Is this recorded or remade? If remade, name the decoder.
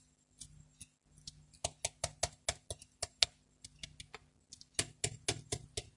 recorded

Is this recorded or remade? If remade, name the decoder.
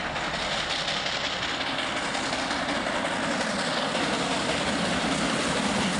recorded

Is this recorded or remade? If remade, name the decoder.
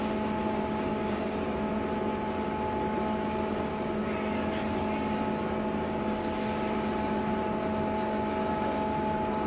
recorded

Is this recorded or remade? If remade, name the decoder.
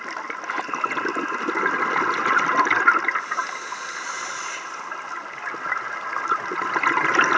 recorded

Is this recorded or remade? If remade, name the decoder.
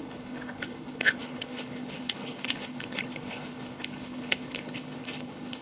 remade, codec, HILCodec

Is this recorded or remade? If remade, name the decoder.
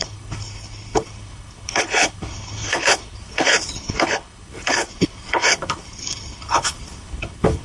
remade, codec, HILCodec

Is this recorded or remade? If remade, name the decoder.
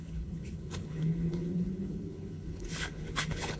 remade, codec, HILCodec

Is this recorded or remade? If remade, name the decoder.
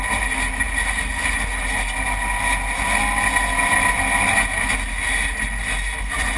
recorded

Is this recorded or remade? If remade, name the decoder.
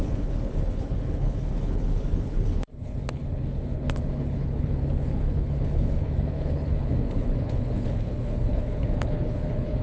remade, codec, HILCodec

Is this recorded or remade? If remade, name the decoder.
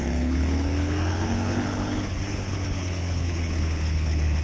remade, codec, HILCodec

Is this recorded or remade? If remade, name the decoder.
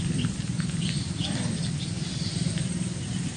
recorded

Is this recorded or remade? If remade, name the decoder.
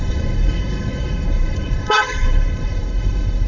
remade, codec, HILCodec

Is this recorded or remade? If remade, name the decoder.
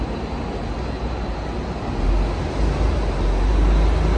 recorded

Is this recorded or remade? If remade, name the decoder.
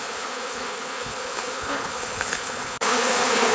remade, codec, HILCodec